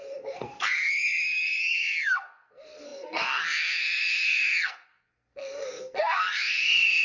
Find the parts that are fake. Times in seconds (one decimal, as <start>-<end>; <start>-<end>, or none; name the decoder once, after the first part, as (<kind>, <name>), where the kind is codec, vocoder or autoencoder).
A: 0.0-7.0 (codec, SNAC)